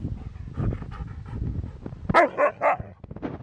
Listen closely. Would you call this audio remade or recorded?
recorded